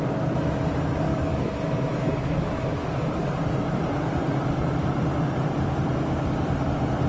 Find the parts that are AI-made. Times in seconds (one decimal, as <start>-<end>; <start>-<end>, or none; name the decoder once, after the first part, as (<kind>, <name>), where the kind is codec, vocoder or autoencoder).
1.1-3.0 (autoencoder, DAC-VAE)